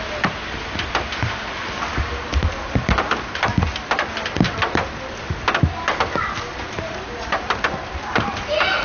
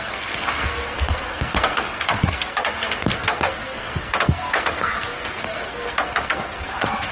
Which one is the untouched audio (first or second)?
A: first